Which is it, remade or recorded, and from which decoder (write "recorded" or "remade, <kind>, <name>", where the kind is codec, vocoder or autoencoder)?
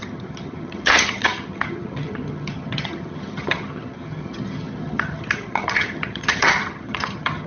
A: remade, vocoder, HiFi-GAN